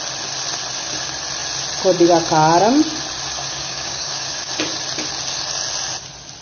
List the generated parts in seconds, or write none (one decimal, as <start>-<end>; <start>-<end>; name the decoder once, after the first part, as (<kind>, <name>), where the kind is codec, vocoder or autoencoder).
3.3-4.6 (codec, DAC)